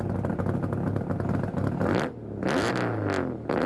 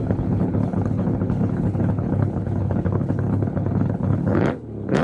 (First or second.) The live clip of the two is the first